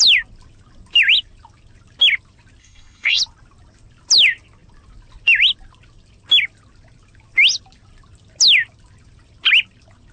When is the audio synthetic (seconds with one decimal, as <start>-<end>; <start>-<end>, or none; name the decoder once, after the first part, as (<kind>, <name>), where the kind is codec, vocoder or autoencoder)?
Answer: 2.6-3.2 (codec, SNAC)